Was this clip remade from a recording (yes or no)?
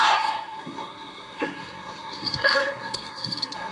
yes